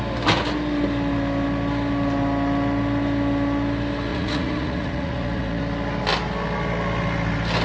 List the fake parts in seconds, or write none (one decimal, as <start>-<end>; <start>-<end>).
4.1-5.6

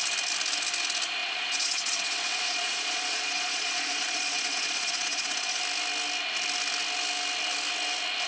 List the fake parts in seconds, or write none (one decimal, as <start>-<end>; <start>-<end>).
1.2-5.6

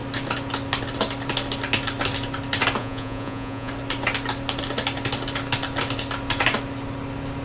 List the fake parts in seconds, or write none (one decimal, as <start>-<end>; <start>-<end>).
2.8-3.7

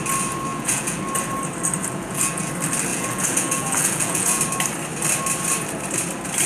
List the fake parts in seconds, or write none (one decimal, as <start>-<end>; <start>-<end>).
0.5-1.0; 1.8-2.5; 2.9-4.4

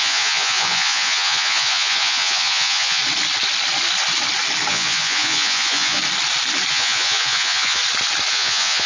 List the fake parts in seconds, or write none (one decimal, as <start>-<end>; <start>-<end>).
0.0-3.0; 4.7-6.0; 6.7-7.8; 8.3-8.9